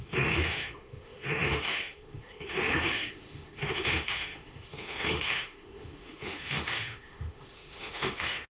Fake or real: fake